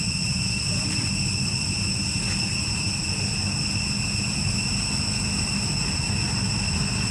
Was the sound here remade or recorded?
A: recorded